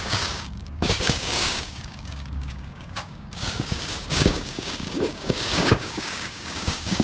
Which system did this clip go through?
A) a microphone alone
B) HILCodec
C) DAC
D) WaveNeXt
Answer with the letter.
C